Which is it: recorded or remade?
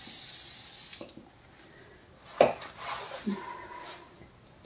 recorded